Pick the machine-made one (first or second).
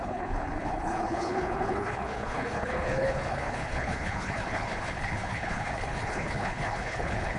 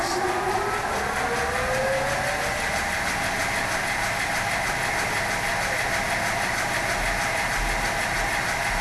first